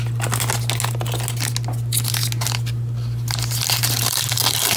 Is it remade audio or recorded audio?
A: recorded